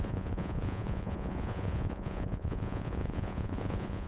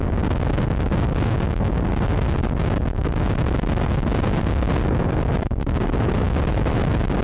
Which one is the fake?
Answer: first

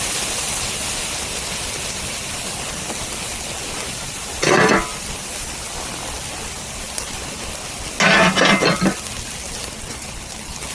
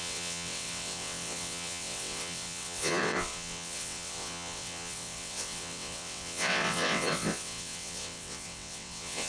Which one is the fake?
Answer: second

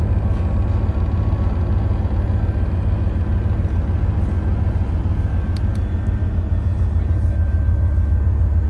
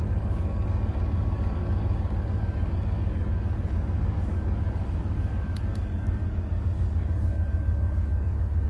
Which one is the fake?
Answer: second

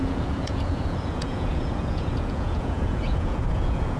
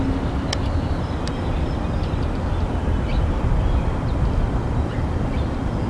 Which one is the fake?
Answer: first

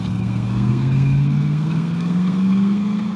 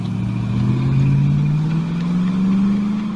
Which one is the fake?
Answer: first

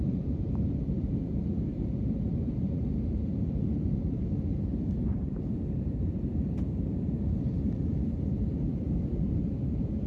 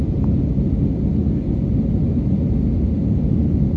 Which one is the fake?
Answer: first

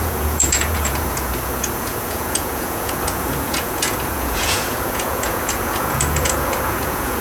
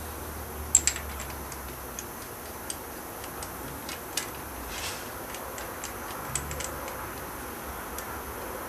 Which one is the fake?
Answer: first